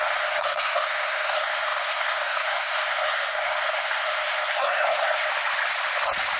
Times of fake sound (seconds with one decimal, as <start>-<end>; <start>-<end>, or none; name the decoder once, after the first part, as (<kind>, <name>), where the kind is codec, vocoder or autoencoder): 0.0-5.3 (codec, SNAC)